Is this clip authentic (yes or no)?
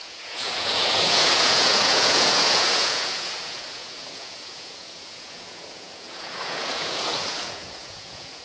no